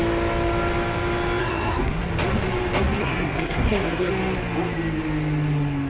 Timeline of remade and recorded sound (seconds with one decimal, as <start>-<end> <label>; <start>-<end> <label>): 0.0-1.4 recorded; 1.4-2.1 remade; 2.1-3.0 recorded; 3.0-4.1 remade; 4.1-5.9 recorded